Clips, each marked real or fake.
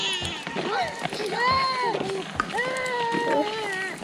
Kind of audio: real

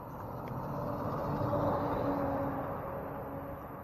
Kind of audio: real